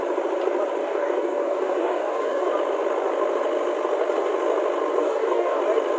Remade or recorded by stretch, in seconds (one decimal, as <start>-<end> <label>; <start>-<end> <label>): 0.0-0.8 recorded; 0.8-2.5 remade; 2.5-5.0 recorded; 5.0-5.6 remade; 5.6-6.0 recorded